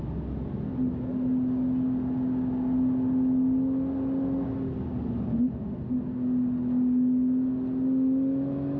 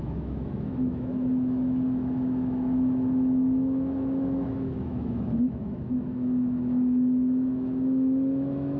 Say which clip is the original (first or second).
first